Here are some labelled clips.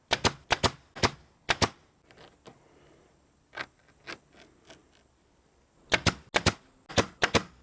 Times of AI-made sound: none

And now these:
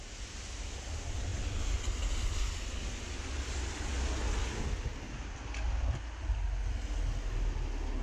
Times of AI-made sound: none